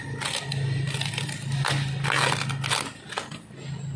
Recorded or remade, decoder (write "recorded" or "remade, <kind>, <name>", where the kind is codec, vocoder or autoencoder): recorded